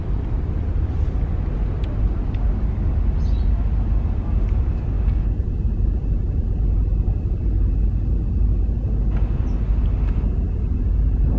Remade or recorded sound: recorded